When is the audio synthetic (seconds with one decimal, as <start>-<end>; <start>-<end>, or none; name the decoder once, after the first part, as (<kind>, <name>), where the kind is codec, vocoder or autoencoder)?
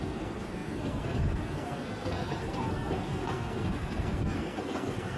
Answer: 0.0-5.2 (codec, SNAC)